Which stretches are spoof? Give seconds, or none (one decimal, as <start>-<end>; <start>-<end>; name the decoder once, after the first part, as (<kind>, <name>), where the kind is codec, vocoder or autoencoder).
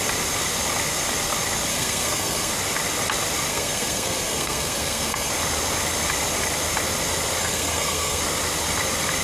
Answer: 1.7-2.5 (codec, SNAC); 3.5-5.3; 7.4-8.2